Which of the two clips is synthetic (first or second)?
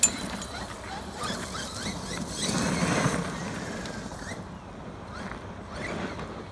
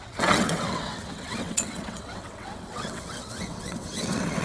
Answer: second